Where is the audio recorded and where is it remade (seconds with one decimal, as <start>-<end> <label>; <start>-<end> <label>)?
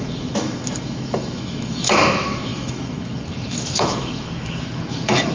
0.0-5.3 remade